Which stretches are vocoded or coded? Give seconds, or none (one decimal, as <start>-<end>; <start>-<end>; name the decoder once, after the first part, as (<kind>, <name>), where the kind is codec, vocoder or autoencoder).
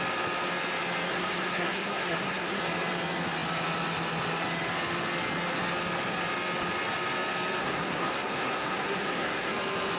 1.1-2.6 (codec, SNAC); 7.6-9.5